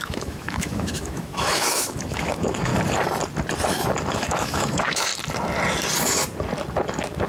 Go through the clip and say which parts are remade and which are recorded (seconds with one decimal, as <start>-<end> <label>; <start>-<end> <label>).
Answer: 0.0-2.7 remade; 2.7-4.1 recorded; 4.1-5.1 remade; 5.1-7.3 recorded